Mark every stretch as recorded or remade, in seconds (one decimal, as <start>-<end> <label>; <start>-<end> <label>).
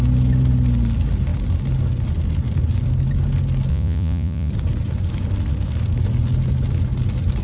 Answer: 0.0-3.7 recorded; 3.7-4.5 remade; 4.5-7.4 recorded